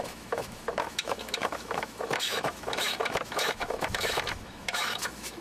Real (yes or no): no